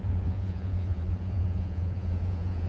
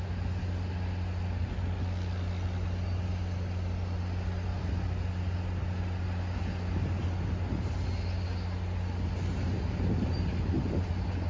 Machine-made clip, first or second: first